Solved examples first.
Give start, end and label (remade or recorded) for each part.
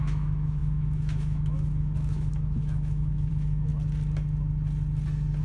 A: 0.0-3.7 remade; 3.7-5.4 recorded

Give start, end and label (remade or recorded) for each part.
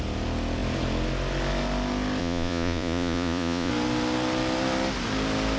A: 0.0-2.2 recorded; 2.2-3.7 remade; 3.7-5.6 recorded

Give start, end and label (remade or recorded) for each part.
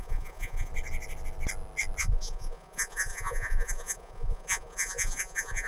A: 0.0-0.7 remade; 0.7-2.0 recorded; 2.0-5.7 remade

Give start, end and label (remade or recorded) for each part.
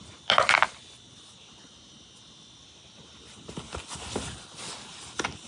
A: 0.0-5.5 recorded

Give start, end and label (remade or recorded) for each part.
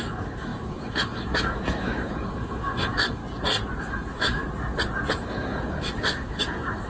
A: 0.0-3.2 remade; 3.2-3.8 recorded; 3.8-4.4 remade; 4.4-5.1 recorded; 5.1-6.9 remade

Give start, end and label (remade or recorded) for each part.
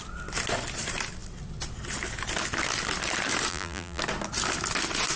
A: 0.0-3.5 recorded; 3.5-4.0 remade; 4.0-5.2 recorded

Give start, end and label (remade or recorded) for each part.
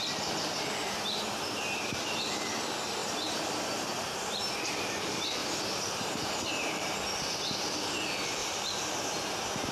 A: 0.0-0.8 recorded; 0.8-1.7 remade; 1.7-3.0 recorded; 3.0-4.6 remade; 4.6-5.4 recorded; 5.4-7.0 remade; 7.0-9.7 recorded